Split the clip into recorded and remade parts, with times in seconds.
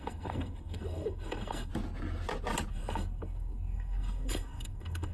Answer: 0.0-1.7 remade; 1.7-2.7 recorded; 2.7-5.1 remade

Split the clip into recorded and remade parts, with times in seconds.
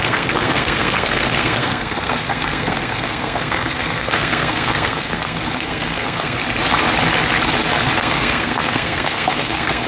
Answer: 0.0-6.4 remade; 6.4-8.0 recorded; 8.0-9.9 remade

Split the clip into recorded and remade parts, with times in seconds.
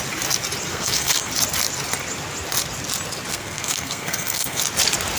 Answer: 0.0-0.7 recorded; 0.7-1.3 remade; 1.3-3.3 recorded; 3.3-4.6 remade; 4.6-5.2 recorded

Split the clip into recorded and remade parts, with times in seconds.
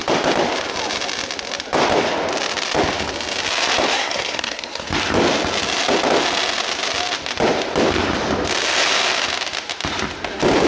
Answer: 0.0-3.9 recorded; 3.9-4.9 remade; 4.9-10.7 recorded